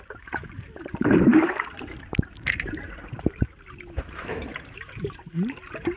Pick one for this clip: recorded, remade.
remade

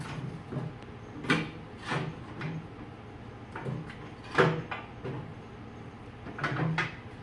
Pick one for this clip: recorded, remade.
recorded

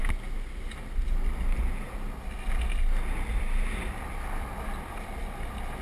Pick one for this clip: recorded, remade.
recorded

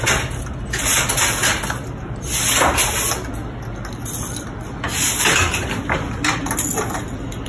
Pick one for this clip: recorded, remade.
recorded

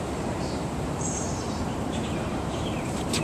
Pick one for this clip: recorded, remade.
remade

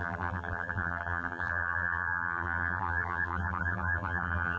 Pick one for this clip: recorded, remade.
remade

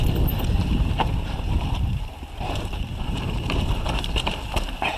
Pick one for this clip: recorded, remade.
remade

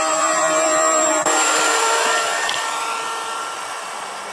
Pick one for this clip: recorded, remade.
remade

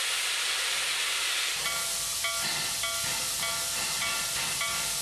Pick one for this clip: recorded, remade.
recorded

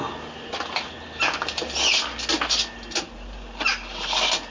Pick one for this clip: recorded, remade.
recorded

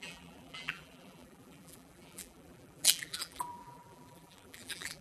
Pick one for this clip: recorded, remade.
remade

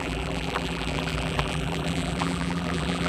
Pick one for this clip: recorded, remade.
remade